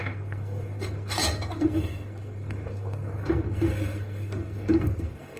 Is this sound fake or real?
fake